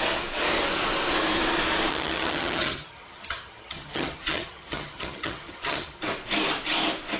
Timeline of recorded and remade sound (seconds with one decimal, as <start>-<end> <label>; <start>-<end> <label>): 0.0-1.9 recorded; 1.9-6.0 remade; 6.0-7.2 recorded